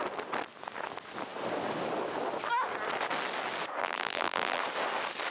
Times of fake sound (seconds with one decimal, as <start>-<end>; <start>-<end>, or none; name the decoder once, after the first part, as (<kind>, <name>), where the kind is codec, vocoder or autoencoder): 3.8-4.6 (vocoder, BigVGAN v2)